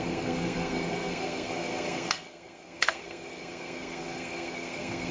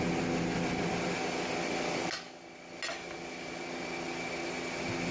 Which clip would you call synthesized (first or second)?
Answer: first